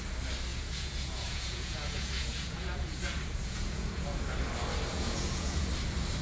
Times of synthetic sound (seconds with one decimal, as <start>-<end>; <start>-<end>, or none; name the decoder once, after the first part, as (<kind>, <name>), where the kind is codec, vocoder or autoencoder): 0.5-4.2 (vocoder, Vocos); 4.9-5.7